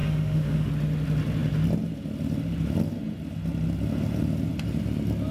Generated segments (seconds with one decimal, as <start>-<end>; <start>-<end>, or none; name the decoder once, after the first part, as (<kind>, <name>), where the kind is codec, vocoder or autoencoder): 0.0-0.7 (autoencoder, DAC-VAE)